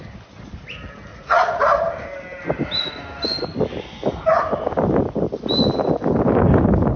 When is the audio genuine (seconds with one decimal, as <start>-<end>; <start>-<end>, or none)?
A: 0.0-1.1; 1.6-7.0